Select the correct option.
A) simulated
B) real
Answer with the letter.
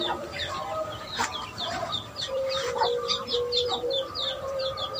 A